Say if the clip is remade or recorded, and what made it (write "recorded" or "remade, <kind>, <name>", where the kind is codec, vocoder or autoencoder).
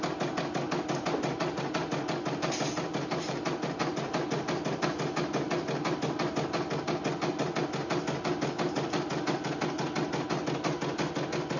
recorded